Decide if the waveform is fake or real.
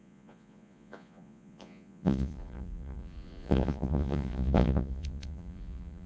fake